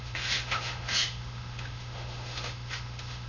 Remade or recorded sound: remade